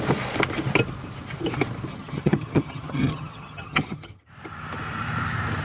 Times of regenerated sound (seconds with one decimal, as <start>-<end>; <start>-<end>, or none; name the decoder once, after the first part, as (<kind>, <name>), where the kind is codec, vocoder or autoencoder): 1.9-4.3 (vocoder, HiFi-GAN)

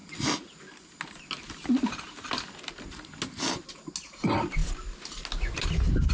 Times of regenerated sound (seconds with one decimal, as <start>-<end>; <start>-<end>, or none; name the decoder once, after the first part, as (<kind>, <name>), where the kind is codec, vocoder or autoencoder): none

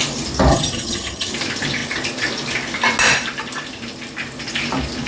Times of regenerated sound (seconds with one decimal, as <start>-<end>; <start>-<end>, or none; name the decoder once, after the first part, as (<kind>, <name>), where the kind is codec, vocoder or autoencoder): 0.5-1.3 (vocoder, HiFi-GAN)